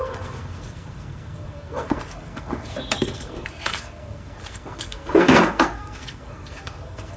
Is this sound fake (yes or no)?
yes